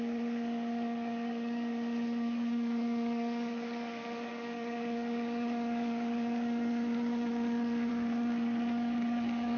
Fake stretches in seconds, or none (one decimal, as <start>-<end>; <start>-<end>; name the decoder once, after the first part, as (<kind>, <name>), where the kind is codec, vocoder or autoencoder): 0.0-9.6 (codec, DAC)